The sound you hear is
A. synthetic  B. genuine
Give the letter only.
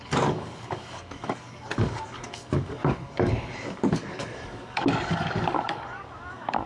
A